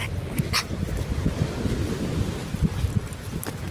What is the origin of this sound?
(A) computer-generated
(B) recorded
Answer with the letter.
B